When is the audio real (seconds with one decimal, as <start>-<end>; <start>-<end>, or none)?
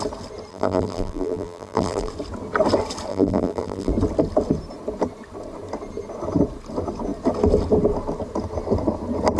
0.0-0.5; 2.1-3.1; 3.9-9.4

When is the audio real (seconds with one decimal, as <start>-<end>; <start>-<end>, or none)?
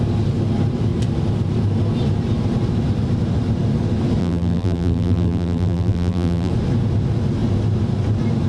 0.0-4.2; 6.5-8.5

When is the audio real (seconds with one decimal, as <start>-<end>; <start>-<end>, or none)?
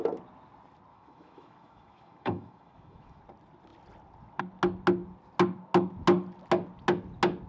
0.0-0.9; 3.2-7.5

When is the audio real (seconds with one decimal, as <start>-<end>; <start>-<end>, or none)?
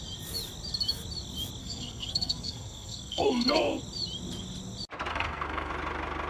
0.0-1.6; 3.8-5.1; 5.7-6.3